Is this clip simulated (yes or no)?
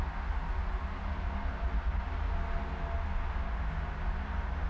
no